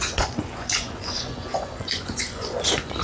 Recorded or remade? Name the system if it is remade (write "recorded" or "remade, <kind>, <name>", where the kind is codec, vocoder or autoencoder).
remade, vocoder, Vocos